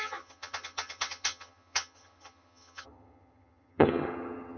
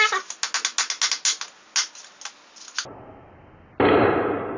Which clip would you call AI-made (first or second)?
first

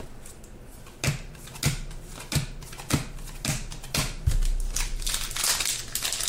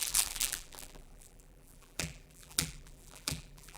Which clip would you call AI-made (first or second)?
second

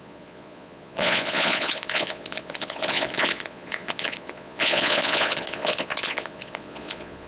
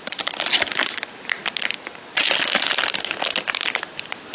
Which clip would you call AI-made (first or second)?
first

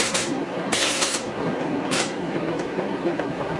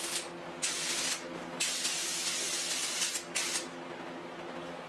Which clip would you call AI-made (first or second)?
first